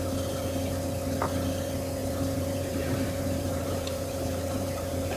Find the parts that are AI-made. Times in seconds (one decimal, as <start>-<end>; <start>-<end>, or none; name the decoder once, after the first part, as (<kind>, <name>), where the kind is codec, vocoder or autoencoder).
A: 2.0-5.2 (vocoder, BigVGAN v2)